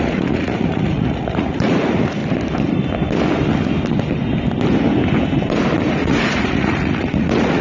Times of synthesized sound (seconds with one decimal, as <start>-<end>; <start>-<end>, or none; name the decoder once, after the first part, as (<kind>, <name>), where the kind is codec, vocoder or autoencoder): 0.0-2.2 (vocoder, Vocos); 5.9-7.6